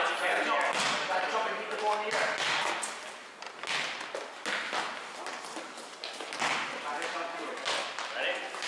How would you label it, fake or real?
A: real